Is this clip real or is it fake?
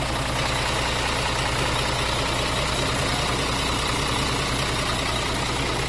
real